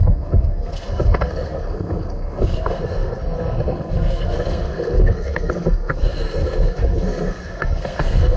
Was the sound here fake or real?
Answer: fake